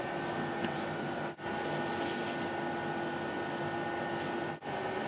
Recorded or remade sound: recorded